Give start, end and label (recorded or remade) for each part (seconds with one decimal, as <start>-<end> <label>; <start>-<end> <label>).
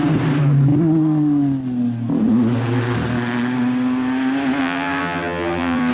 0.0-4.6 recorded; 4.6-5.9 remade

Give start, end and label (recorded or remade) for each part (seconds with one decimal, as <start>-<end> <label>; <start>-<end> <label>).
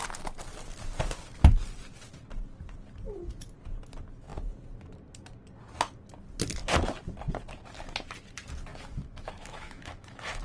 0.0-8.7 recorded; 8.7-10.4 remade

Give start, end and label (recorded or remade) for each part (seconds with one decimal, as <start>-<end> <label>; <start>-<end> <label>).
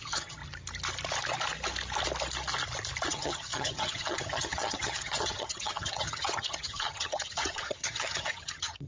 0.0-0.4 remade; 0.4-3.1 recorded; 3.1-8.9 remade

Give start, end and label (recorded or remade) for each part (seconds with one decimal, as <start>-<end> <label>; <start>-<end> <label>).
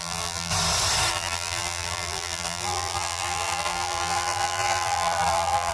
0.0-0.5 remade; 0.5-1.1 recorded; 1.1-5.7 remade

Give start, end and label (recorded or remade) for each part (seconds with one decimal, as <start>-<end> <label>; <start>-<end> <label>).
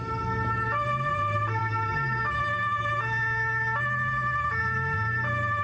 0.0-5.6 recorded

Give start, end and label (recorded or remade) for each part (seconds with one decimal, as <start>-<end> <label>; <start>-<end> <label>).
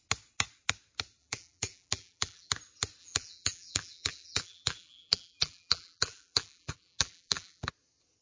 0.0-1.2 recorded; 1.2-2.5 remade; 2.5-3.0 recorded; 3.0-7.7 remade; 7.7-8.2 recorded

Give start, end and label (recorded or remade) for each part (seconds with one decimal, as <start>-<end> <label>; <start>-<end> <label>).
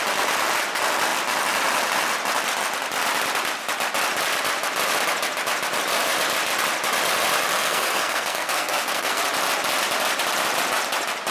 0.0-7.5 recorded; 7.5-9.2 remade; 9.2-11.3 recorded